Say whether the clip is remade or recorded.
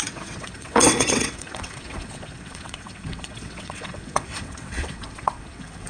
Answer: remade